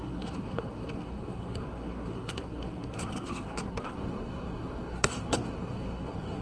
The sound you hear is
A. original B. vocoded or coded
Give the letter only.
B